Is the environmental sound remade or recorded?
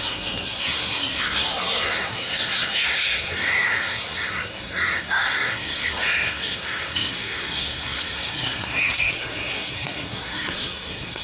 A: remade